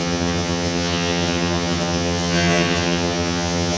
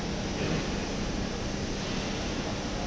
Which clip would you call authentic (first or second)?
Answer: second